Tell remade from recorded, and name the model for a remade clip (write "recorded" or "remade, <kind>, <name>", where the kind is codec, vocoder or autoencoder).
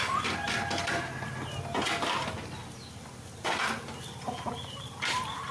recorded